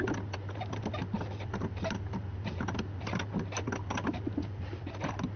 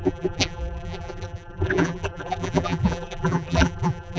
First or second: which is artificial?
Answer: second